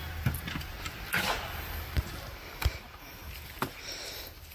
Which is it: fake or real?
real